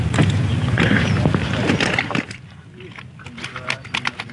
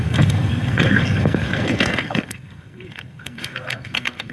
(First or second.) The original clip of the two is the first